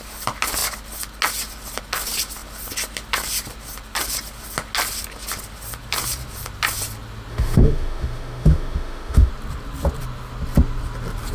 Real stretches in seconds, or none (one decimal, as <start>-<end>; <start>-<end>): 0.0-7.3; 9.3-11.3